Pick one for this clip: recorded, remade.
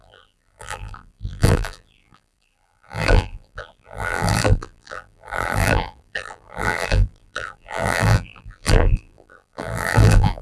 remade